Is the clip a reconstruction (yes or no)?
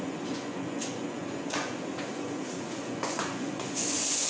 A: yes